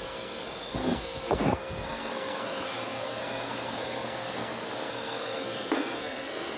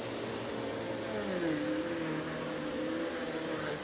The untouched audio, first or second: second